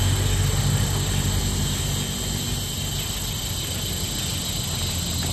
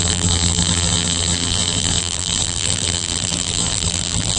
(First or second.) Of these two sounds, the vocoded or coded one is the second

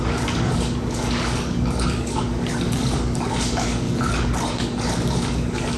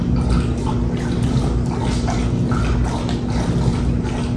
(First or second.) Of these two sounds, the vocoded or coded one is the first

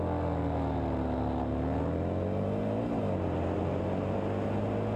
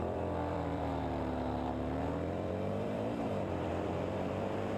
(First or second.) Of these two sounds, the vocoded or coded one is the second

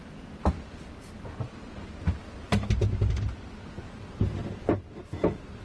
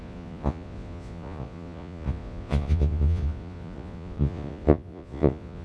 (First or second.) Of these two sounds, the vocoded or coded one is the second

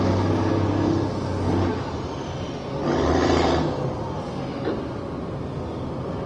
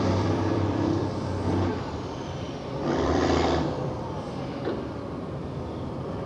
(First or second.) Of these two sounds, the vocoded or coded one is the second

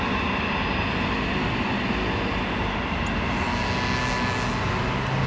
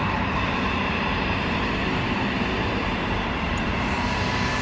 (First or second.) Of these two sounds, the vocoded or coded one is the second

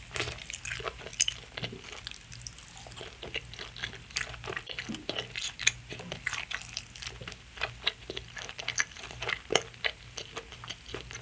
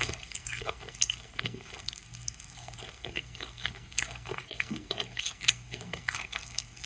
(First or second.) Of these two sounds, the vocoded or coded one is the second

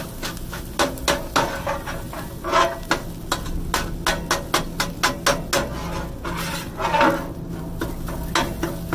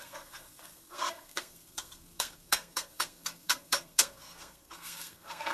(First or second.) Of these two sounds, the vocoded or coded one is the second